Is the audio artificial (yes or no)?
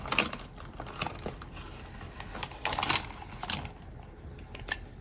no